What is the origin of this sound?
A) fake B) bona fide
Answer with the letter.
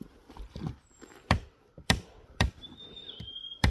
A